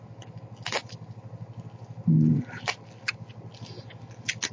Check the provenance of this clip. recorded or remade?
recorded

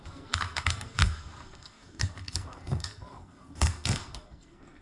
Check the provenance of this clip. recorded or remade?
remade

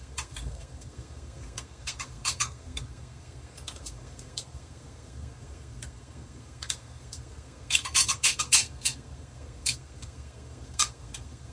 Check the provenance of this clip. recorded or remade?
remade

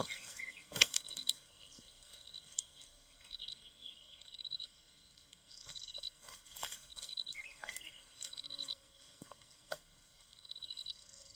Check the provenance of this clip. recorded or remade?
remade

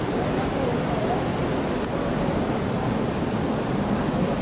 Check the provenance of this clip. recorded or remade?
recorded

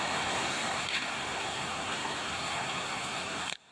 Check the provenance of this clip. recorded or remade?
remade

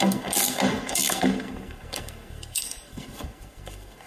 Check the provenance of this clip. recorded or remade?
remade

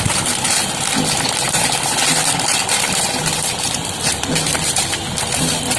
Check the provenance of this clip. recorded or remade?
recorded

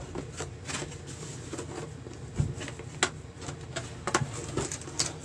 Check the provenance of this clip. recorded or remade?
recorded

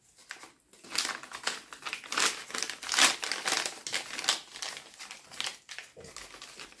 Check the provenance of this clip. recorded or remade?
recorded